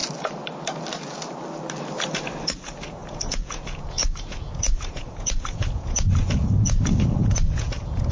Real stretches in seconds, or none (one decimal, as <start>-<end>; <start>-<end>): 0.0-2.5